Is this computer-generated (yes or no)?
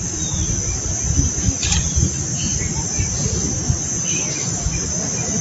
no